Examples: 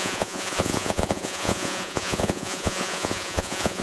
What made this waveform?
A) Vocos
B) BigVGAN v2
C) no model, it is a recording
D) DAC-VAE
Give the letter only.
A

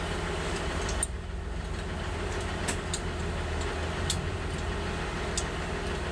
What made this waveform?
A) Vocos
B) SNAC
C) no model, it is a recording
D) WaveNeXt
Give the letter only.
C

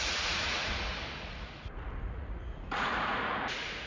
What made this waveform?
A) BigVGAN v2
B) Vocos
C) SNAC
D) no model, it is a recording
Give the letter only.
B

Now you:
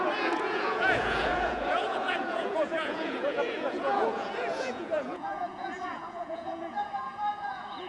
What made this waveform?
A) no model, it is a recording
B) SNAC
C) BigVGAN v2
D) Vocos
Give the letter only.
D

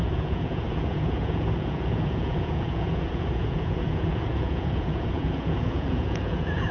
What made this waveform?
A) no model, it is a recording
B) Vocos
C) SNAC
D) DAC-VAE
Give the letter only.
B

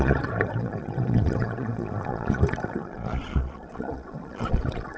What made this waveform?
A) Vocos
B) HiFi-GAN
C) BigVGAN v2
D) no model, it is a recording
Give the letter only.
A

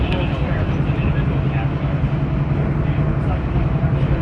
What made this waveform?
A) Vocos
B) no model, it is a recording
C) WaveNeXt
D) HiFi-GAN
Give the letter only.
B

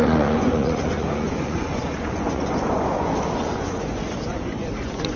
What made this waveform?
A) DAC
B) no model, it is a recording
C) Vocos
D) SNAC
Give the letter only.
C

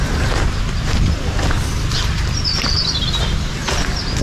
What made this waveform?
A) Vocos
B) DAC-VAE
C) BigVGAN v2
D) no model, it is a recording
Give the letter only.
D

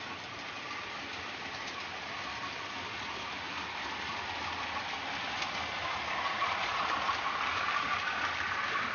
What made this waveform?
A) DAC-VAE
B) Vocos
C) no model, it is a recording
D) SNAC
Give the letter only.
C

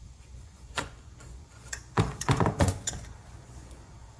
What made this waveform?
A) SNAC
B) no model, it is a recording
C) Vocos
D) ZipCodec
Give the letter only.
C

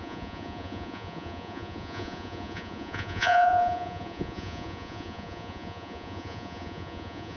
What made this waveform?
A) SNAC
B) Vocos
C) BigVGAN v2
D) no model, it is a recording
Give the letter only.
B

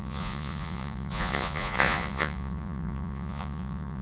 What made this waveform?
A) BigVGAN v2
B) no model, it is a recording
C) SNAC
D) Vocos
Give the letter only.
D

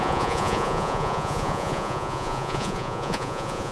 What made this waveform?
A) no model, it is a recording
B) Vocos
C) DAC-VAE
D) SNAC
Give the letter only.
B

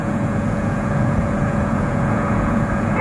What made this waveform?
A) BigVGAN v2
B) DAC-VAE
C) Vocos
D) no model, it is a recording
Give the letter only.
C